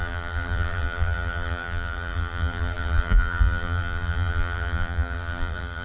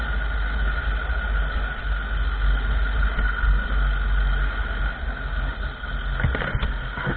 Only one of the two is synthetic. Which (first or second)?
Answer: first